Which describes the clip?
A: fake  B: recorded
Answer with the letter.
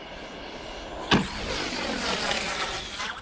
B